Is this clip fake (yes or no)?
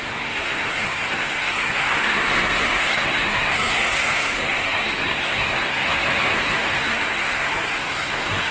yes